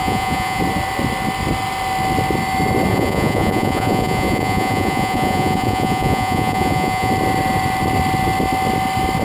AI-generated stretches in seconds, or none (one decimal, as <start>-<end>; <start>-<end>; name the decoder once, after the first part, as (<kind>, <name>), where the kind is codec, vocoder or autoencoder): 0.0-0.6 (vocoder, Vocos); 2.9-7.1